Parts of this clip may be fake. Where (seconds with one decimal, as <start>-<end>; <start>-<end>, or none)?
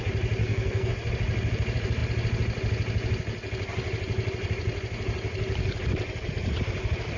0.4-0.9